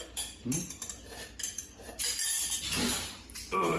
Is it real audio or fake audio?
real